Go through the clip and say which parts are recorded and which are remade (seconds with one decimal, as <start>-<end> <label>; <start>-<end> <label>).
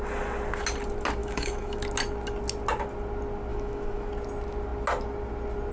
0.0-1.2 recorded; 1.2-1.8 remade; 1.8-3.5 recorded; 3.5-4.1 remade; 4.1-5.7 recorded